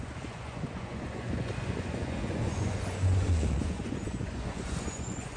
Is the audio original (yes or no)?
no